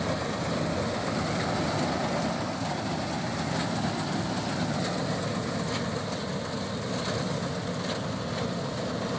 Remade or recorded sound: recorded